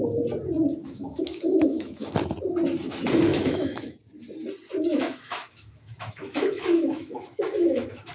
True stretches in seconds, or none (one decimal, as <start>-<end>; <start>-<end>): 0.0-0.8; 2.1-3.3; 4.0-4.9